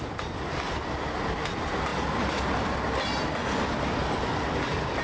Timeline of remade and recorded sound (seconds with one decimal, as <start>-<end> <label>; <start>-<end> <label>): 0.0-5.0 recorded